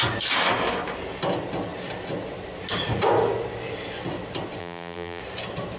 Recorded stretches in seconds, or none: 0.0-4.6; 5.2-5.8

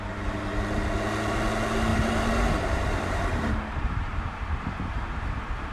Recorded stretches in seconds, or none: 0.0-1.9; 5.3-5.7

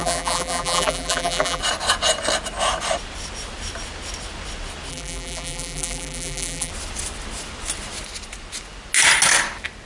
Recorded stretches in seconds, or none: 1.6-4.9; 6.7-9.9

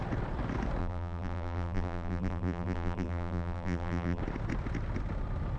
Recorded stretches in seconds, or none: 0.0-0.8; 4.2-5.6